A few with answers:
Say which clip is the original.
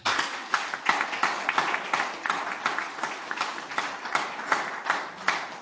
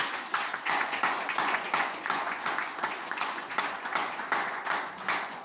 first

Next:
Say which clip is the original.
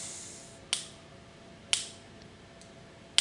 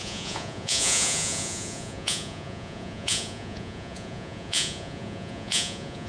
first